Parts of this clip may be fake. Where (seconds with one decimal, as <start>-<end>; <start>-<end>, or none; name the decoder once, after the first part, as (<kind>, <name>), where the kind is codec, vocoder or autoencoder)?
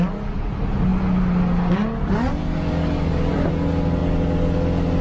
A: none